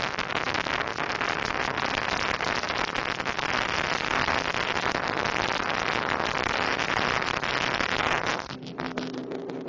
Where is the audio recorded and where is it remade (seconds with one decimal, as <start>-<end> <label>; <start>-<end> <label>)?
0.0-9.7 recorded